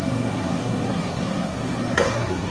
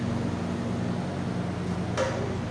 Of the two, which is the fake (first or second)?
first